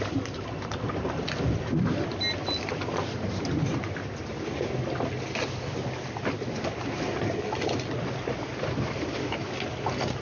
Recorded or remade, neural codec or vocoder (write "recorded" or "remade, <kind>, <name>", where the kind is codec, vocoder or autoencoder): recorded